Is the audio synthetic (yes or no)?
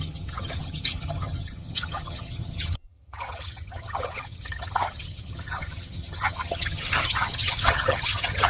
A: yes